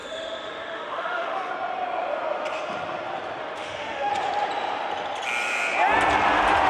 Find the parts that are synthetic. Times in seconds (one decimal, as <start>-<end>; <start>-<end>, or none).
0.0-1.5; 3.4-4.1